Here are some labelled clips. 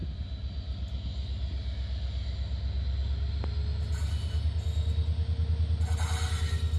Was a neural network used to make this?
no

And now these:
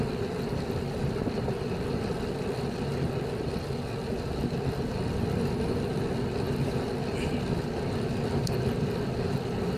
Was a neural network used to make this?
no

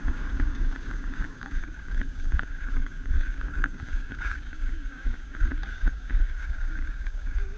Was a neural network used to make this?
yes